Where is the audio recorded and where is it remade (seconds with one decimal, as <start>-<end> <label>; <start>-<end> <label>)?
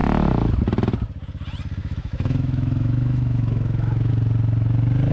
0.0-1.8 recorded; 1.8-4.1 remade; 4.1-5.1 recorded